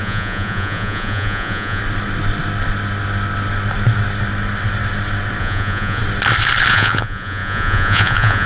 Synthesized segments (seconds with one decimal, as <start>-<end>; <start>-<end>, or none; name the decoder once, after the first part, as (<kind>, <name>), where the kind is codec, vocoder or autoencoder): 0.0-1.8 (vocoder, Vocos); 5.4-6.0; 6.7-8.5